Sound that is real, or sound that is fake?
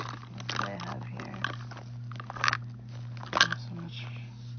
real